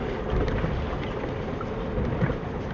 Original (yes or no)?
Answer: yes